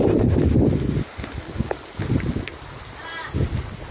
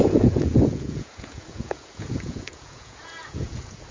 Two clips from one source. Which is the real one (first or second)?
first